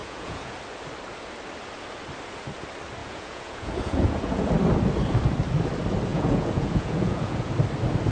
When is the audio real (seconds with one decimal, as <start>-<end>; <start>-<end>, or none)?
0.6-3.0; 4.5-6.1; 7.5-8.1